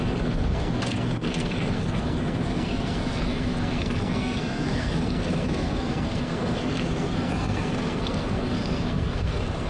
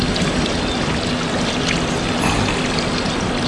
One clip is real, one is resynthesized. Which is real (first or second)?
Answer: second